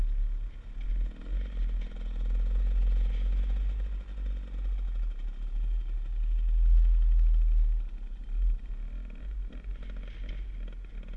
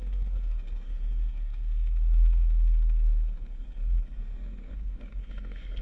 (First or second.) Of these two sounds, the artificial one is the second